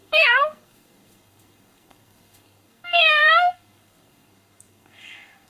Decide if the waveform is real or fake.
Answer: fake